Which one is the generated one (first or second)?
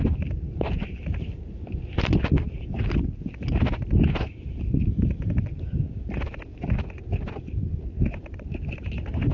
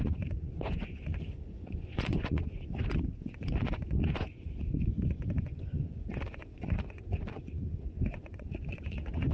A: second